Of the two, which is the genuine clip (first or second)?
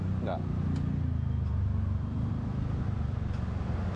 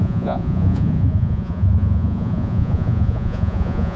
first